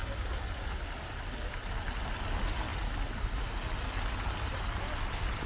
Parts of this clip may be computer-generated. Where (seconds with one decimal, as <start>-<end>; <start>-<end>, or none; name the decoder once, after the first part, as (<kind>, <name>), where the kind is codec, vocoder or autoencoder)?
none